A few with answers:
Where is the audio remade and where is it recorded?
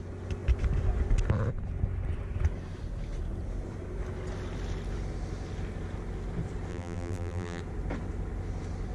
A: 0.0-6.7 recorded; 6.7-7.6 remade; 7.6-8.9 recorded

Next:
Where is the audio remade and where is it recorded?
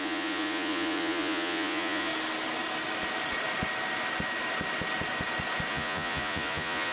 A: 0.0-2.1 remade; 2.1-5.7 recorded; 5.7-6.9 remade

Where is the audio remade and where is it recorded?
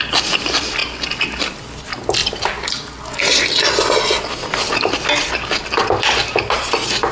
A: 0.0-7.1 recorded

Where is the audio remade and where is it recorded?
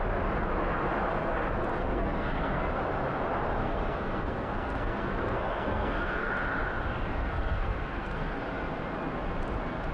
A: 0.0-1.8 recorded; 1.8-2.8 remade; 2.8-3.6 recorded; 3.6-6.3 remade; 6.3-7.2 recorded; 7.2-8.4 remade; 8.4-9.9 recorded